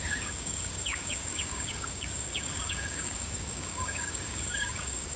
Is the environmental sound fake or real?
fake